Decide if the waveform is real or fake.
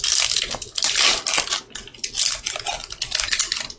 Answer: real